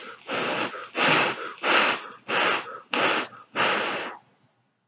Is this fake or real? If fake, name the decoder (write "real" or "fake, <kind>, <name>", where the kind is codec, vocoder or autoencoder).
real